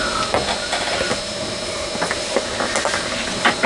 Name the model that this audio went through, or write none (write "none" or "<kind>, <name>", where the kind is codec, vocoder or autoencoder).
none